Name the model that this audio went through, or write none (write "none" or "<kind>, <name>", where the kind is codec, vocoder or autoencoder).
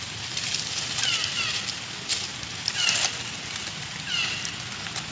none